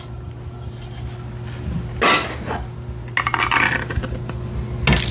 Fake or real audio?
real